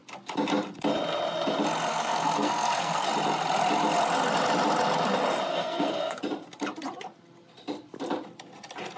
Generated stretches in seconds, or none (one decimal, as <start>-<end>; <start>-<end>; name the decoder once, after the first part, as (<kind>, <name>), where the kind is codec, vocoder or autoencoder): 1.9-3.1 (codec, SNAC); 5.5-6.2